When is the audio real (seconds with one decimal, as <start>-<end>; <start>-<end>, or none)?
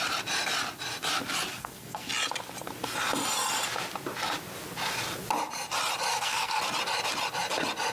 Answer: 0.0-1.5; 2.1-6.1; 6.6-7.9